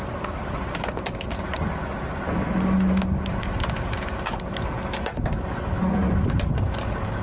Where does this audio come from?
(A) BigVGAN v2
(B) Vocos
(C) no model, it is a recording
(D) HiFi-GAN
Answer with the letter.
C